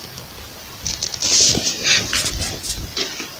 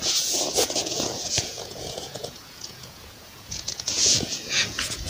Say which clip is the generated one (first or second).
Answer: second